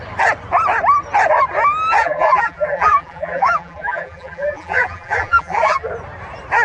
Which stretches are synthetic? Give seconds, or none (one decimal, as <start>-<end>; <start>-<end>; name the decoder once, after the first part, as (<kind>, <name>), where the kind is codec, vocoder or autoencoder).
2.0-5.9 (vocoder, BigVGAN v2)